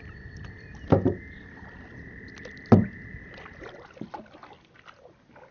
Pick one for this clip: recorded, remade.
recorded